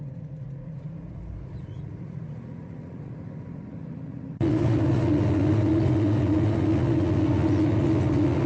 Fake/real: fake